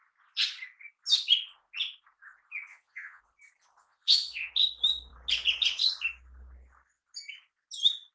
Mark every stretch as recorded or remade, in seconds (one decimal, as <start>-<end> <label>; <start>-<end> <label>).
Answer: 0.0-2.7 recorded; 2.7-3.2 remade; 3.2-3.8 recorded; 3.8-4.5 remade; 4.5-8.1 recorded